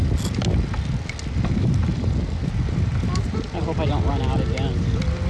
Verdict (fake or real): real